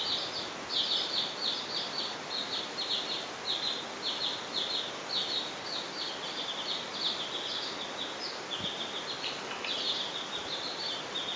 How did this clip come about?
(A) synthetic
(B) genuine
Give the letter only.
B